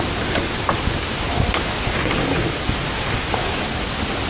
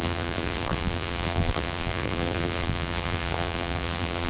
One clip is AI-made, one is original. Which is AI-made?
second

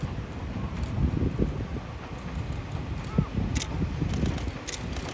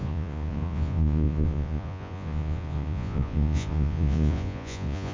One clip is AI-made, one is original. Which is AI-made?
second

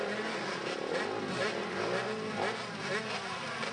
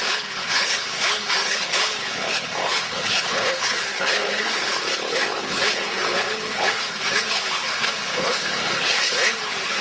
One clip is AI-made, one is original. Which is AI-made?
second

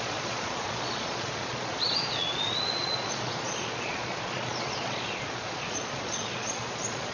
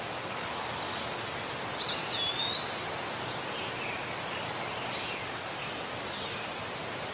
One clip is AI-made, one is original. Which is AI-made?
first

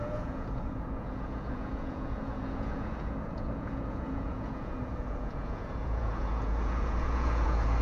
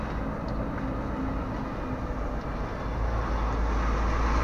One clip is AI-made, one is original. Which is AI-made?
first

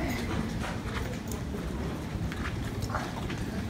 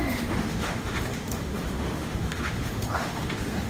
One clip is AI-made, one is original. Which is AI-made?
second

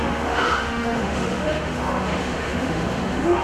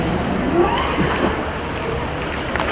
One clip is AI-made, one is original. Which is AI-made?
first